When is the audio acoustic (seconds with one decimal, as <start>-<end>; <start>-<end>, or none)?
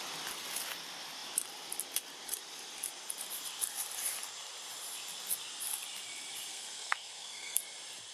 0.0-6.5; 7.6-8.1